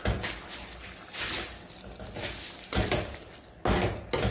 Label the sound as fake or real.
real